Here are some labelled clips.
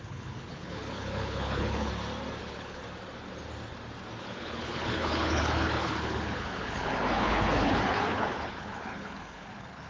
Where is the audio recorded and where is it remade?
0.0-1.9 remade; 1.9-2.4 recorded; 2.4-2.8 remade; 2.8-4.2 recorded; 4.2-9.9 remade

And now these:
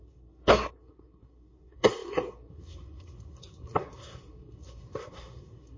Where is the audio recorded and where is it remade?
0.0-5.8 remade